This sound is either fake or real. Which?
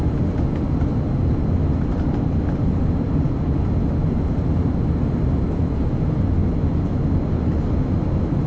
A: real